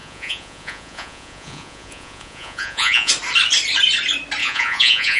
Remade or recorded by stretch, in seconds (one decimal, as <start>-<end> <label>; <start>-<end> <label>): 0.0-3.1 remade; 3.1-4.4 recorded; 4.4-5.2 remade